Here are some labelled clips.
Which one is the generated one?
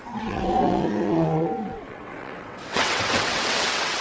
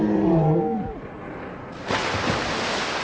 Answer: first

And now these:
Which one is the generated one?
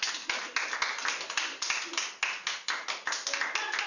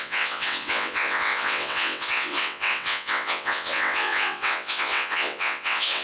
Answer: second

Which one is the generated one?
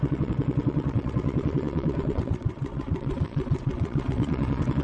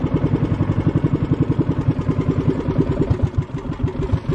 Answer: first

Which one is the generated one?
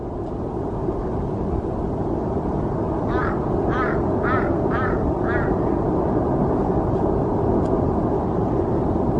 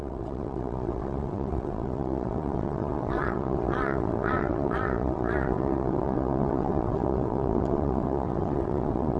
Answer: second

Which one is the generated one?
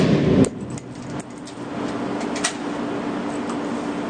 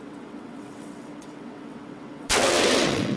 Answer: second